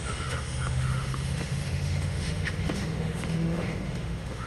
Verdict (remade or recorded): remade